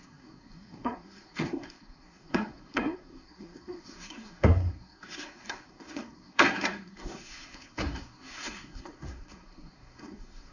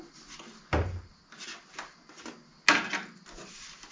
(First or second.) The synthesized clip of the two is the first